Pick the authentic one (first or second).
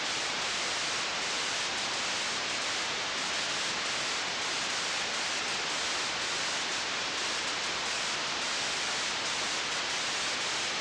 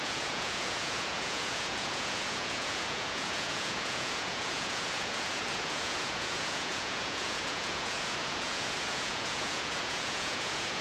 first